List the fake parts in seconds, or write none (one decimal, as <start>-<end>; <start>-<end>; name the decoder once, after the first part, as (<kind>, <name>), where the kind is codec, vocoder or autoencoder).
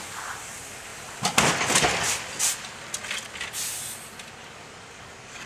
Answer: 4.4-5.5 (codec, DAC)